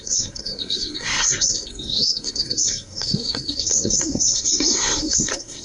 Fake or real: fake